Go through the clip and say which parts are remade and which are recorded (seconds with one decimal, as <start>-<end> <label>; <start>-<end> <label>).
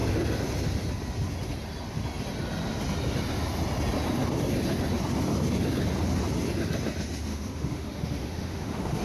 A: 0.0-7.3 recorded; 7.3-9.0 remade